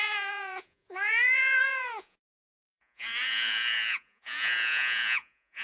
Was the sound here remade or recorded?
remade